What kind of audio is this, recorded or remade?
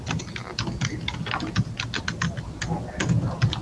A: recorded